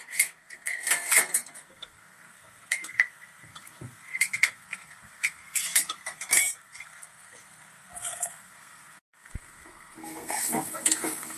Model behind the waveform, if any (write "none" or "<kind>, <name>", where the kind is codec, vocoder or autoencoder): codec, SNAC